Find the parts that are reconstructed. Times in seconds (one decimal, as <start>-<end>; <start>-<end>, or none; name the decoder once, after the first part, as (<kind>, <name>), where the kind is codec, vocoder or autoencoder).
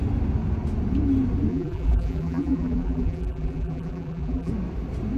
1.5-4.5 (vocoder, BigVGAN v2)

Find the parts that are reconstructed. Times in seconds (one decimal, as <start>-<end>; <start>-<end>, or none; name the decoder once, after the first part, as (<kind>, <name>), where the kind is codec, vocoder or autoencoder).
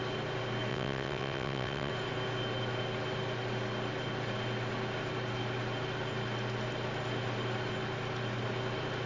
0.7-1.9 (vocoder, WaveNeXt)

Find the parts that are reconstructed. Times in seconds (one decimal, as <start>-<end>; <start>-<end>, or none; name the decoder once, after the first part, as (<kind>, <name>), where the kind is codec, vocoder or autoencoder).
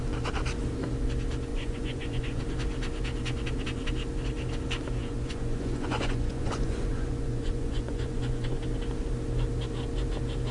1.5-2.4 (vocoder, Vocos); 5.0-8.6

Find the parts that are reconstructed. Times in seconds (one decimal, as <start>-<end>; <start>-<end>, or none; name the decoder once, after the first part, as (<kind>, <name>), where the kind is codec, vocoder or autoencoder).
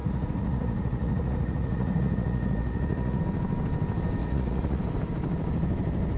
0.0-3.2 (vocoder, Vocos); 4.2-4.8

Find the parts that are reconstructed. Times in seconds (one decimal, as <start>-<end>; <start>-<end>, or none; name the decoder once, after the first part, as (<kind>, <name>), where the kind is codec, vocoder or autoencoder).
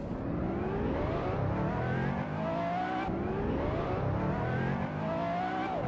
none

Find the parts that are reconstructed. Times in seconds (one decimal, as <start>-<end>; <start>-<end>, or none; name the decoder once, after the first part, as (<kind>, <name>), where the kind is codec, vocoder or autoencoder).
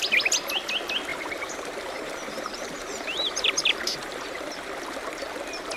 1.1-4.5 (vocoder, BigVGAN v2)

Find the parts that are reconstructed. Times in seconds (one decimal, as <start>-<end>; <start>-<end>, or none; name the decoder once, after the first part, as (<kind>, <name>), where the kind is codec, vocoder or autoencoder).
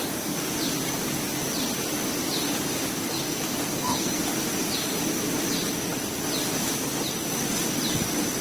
3.3-4.2 (codec, SNAC)